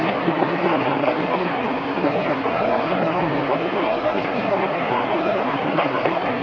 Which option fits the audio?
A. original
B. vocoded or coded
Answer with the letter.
B